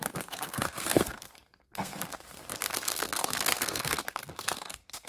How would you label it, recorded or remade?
remade